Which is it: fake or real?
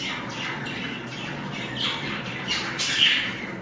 real